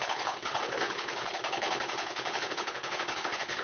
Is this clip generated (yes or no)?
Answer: yes